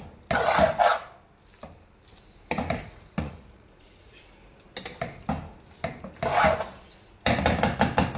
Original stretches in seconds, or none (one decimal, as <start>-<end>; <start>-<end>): 0.0-2.8; 4.2-8.2